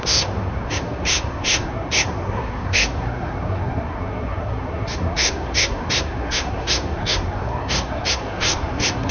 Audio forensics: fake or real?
fake